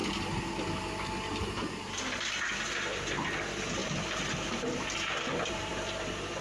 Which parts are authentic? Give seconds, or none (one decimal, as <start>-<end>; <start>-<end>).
0.0-2.5